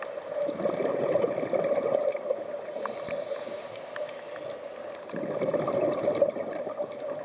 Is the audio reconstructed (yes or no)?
no